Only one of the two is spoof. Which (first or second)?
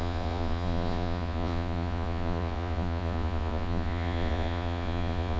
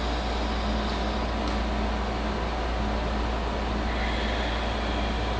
first